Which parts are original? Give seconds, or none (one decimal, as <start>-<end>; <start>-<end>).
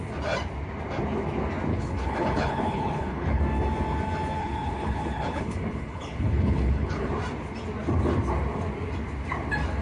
0.0-1.7; 3.4-4.4; 7.1-9.8